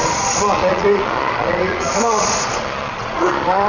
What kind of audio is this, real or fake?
fake